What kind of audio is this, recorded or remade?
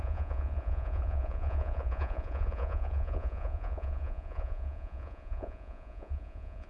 remade